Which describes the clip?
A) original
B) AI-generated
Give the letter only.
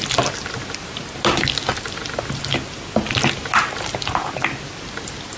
A